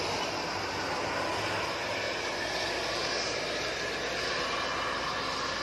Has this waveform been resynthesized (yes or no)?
no